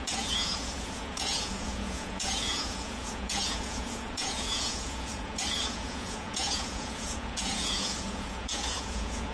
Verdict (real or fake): fake